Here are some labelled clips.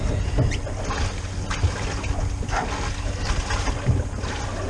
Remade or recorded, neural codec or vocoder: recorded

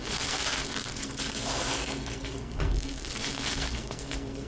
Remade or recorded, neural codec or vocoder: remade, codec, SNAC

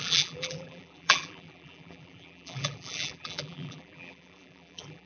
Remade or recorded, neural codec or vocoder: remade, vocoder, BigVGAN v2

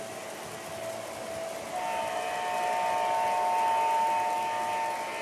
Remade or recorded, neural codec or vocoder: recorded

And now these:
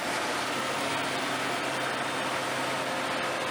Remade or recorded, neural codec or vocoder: recorded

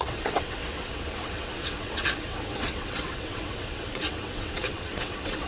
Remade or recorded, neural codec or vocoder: remade, vocoder, WaveNeXt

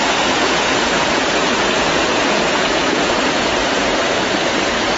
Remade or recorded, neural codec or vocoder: remade, vocoder, Vocos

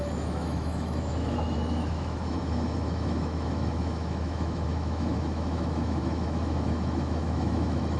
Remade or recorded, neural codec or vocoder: remade, autoencoder, DAC-VAE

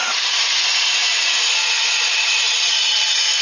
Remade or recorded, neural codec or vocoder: remade, vocoder, Vocos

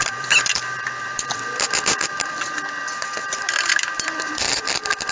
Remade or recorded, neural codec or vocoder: remade, vocoder, BigVGAN v2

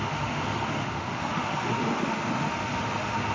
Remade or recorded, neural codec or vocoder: remade, autoencoder, DAC-VAE